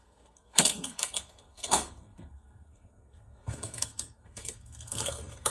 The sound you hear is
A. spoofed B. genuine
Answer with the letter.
A